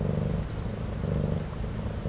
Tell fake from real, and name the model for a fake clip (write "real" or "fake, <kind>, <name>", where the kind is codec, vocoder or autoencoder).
real